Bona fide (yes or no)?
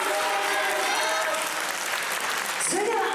yes